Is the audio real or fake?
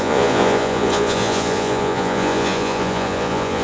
fake